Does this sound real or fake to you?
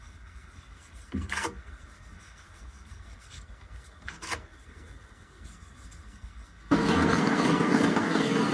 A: fake